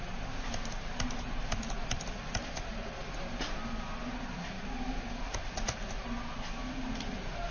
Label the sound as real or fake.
real